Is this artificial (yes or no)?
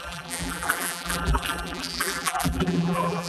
yes